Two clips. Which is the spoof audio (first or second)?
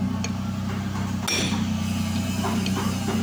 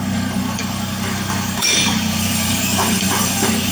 second